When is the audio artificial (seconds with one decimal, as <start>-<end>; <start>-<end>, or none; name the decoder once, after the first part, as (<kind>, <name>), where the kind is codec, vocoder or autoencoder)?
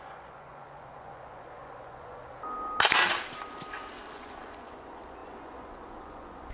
0.0-2.2 (vocoder, Vocos); 4.1-6.5